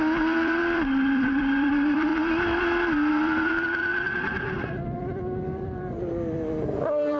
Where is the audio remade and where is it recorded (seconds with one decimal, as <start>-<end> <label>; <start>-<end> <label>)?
0.0-2.1 remade; 2.1-3.1 recorded; 3.1-3.9 remade; 3.9-4.7 recorded; 4.7-7.2 remade

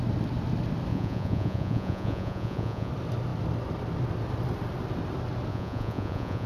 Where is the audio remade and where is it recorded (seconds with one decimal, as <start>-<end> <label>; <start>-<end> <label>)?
0.0-0.9 recorded; 0.9-2.9 remade; 2.9-5.5 recorded; 5.5-6.5 remade

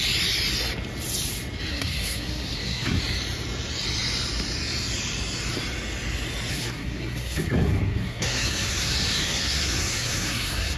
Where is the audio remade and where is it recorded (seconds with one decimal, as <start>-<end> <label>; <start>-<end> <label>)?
0.0-1.7 recorded; 1.7-3.0 remade; 3.0-6.5 recorded; 6.5-10.8 remade

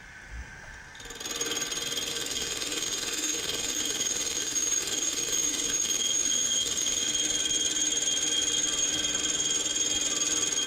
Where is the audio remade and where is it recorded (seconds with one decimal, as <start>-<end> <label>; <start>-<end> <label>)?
0.0-2.1 recorded; 2.1-7.1 remade; 7.1-10.7 recorded

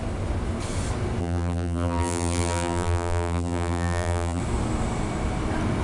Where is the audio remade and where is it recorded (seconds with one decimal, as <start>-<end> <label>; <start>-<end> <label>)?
0.0-1.2 recorded; 1.2-4.4 remade; 4.4-5.8 recorded

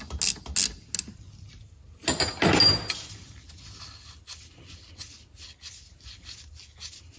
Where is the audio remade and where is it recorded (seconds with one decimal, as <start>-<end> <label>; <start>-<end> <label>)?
0.0-7.2 recorded